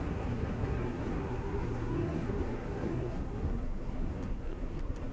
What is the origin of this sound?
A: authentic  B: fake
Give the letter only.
B